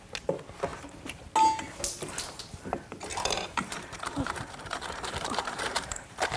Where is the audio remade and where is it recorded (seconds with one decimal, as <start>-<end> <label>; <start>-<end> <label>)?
0.0-0.7 recorded; 0.7-1.3 remade; 1.3-3.1 recorded; 3.1-6.4 remade